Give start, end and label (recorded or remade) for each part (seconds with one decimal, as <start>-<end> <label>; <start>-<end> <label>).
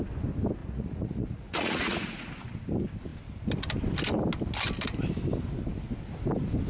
0.0-0.6 recorded; 0.6-2.3 remade; 2.3-6.7 recorded